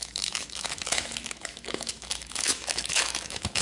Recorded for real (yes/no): no